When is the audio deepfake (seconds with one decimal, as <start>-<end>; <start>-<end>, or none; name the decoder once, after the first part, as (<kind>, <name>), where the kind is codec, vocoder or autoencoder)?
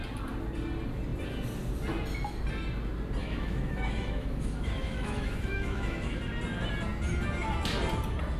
3.2-6.2 (autoencoder, DAC-VAE)